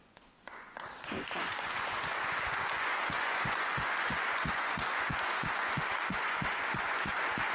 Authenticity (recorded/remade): remade